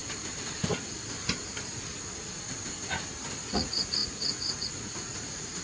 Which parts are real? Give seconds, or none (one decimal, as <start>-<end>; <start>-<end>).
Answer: 0.0-3.4